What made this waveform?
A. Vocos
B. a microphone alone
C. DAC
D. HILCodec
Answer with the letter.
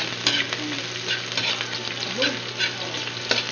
B